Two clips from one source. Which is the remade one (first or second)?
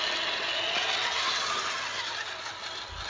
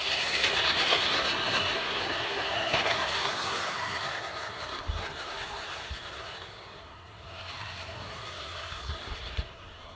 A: second